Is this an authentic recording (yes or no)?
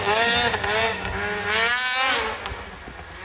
yes